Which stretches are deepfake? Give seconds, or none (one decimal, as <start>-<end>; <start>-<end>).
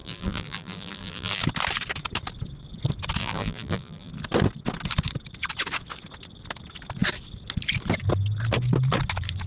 0.0-1.4; 3.2-4.1